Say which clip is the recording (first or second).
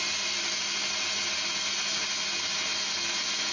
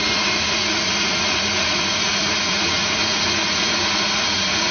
first